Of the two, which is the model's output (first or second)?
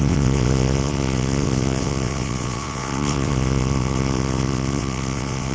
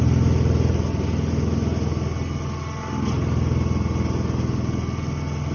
first